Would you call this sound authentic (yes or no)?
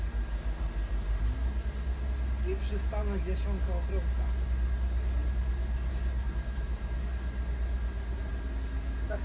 yes